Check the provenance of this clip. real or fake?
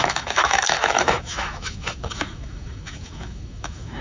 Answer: fake